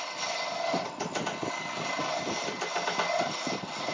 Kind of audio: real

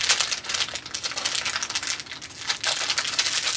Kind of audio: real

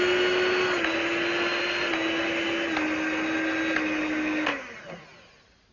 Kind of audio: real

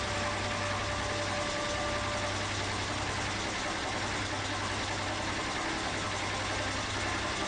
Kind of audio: real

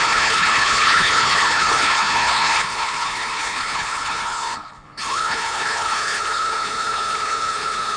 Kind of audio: fake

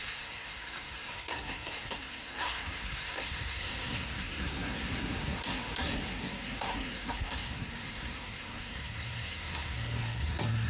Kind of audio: fake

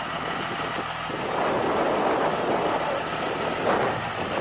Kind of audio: real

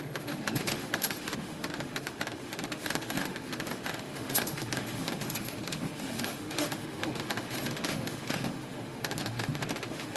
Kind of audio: fake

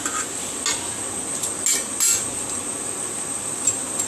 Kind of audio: real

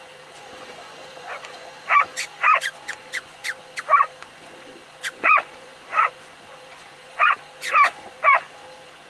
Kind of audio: fake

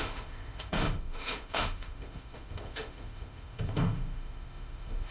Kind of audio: fake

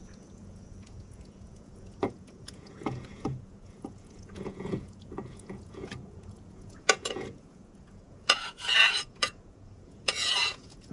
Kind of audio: fake